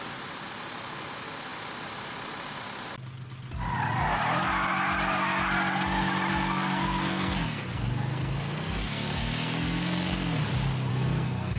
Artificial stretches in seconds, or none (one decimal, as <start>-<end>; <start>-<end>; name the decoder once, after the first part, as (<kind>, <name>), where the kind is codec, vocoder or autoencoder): 6.3-10.4 (codec, SNAC); 10.9-11.6